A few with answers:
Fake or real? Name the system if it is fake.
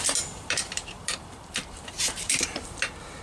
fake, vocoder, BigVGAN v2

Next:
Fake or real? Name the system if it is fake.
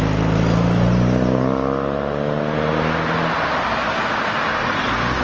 real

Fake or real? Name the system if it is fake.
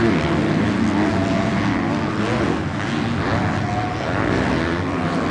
real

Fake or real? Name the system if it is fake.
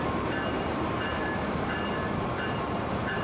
fake, vocoder, BigVGAN v2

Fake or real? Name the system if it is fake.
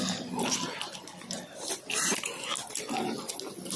real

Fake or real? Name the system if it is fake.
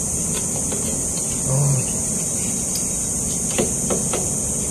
real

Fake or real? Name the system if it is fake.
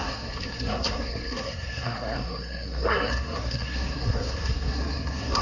fake, codec, SNAC